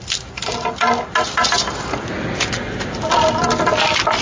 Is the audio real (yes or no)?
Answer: yes